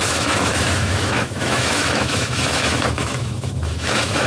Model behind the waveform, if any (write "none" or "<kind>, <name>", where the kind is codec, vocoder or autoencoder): autoencoder, DAC-VAE